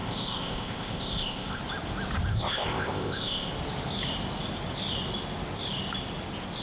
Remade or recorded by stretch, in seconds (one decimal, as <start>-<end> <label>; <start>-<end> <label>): 0.0-1.6 remade; 1.6-2.3 recorded; 2.3-3.5 remade; 3.5-6.6 recorded